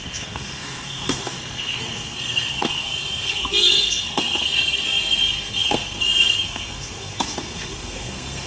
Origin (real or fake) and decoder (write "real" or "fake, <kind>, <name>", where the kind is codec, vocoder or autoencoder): fake, codec, SNAC